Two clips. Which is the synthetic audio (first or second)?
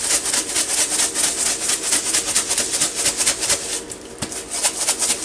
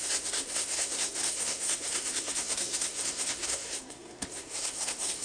second